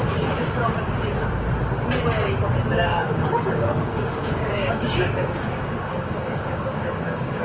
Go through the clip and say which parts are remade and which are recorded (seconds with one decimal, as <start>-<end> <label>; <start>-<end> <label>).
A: 0.0-2.9 recorded; 2.9-7.4 remade